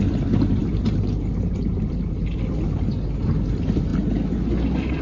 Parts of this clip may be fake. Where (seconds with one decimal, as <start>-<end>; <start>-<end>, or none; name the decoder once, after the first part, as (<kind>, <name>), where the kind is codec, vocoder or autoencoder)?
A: 0.0-3.9 (vocoder, BigVGAN v2)